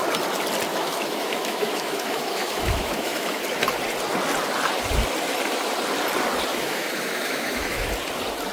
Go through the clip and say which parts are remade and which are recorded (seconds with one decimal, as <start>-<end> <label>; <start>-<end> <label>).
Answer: 0.0-0.7 recorded; 0.7-3.4 remade; 3.4-6.5 recorded; 6.5-7.8 remade; 7.8-8.5 recorded